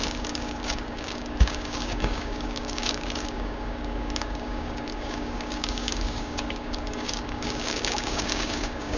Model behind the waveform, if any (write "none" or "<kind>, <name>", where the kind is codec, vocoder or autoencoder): codec, DAC